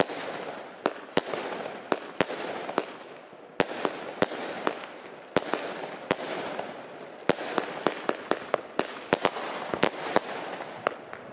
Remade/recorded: recorded